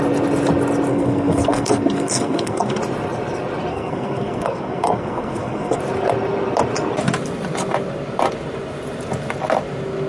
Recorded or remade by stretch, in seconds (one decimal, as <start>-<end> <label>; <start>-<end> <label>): 0.0-0.9 recorded; 0.9-2.8 remade; 2.8-3.7 recorded; 3.7-5.8 remade; 5.8-10.1 recorded